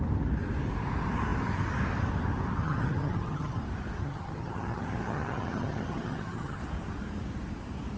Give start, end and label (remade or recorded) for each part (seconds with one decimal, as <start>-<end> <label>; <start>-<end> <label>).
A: 0.0-2.6 recorded; 2.6-3.6 remade; 3.6-4.0 recorded; 4.0-6.6 remade; 6.6-8.0 recorded